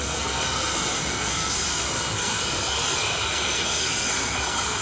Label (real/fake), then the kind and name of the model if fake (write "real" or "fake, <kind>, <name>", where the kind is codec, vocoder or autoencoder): fake, codec, SNAC